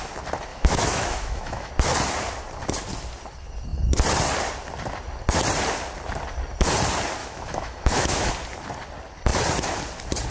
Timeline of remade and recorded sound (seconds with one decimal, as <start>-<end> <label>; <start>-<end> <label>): 0.0-0.5 recorded; 0.5-1.7 remade; 1.7-7.2 recorded; 7.2-8.3 remade; 8.3-10.3 recorded